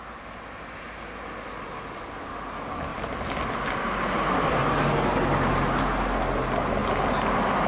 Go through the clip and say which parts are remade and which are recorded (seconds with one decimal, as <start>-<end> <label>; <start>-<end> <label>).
0.0-7.7 recorded

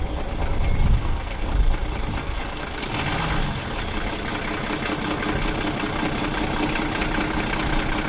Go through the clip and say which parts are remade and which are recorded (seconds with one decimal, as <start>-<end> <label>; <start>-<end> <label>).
0.0-1.0 recorded; 1.0-1.5 remade; 1.5-2.2 recorded; 2.2-2.8 remade; 2.8-8.1 recorded

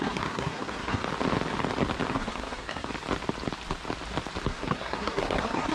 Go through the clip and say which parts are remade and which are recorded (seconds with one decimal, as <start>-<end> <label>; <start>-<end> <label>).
0.0-1.0 remade; 1.0-2.1 recorded; 2.1-2.9 remade; 2.9-4.5 recorded; 4.5-5.7 remade

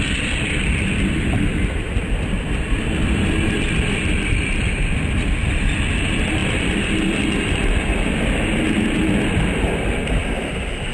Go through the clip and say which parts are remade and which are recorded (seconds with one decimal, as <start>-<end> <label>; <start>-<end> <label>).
0.0-10.9 recorded